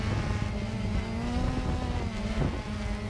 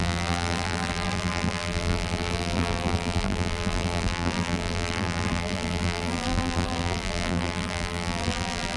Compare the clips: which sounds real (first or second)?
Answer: first